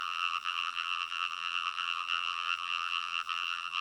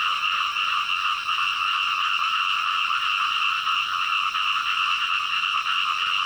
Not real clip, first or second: first